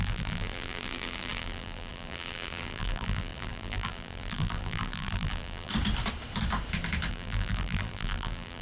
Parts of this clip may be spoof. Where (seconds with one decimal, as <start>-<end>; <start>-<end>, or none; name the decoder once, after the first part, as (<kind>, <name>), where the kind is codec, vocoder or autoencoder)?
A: 0.0-5.7 (vocoder, BigVGAN v2); 7.1-8.6